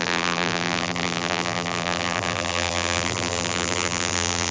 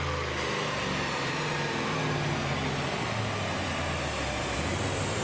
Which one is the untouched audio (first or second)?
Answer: second